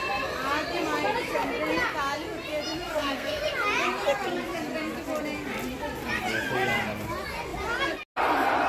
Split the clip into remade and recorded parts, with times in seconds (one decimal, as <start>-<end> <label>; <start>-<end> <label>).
0.0-2.9 recorded; 2.9-3.4 remade; 3.4-8.7 recorded